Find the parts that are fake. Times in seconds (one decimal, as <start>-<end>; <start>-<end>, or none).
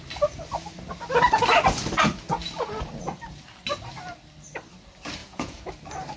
5.2-5.7